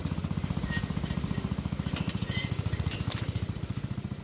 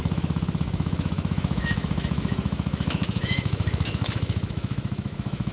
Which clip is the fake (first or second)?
second